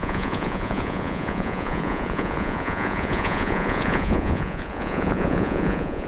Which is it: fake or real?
fake